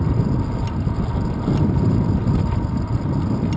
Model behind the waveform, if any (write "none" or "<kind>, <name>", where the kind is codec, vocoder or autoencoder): none